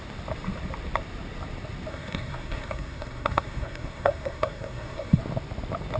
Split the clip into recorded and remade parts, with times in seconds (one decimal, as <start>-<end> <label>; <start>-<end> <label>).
0.0-1.9 recorded; 1.9-5.2 remade; 5.2-6.0 recorded